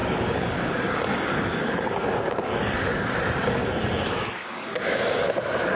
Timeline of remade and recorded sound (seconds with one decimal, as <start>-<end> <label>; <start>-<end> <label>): 0.0-2.6 remade; 2.6-3.6 recorded; 3.6-5.1 remade; 5.1-5.7 recorded